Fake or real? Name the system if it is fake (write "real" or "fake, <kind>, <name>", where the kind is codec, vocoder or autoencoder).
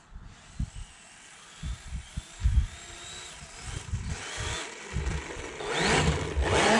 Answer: real